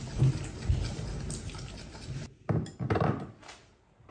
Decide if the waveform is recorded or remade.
recorded